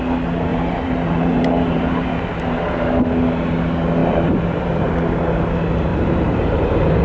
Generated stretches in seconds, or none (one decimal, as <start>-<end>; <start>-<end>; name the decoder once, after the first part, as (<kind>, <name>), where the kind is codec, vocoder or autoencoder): 0.5-2.9 (vocoder, BigVGAN v2); 4.0-4.9; 5.9-7.0